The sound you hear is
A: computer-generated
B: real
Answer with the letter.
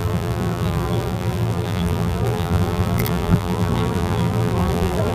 A